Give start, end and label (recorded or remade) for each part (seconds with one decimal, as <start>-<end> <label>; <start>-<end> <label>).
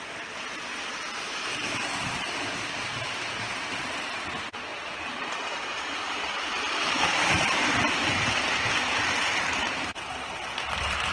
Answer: 0.0-1.5 recorded; 1.5-3.0 remade; 3.0-4.7 recorded; 4.7-10.0 remade; 10.0-11.1 recorded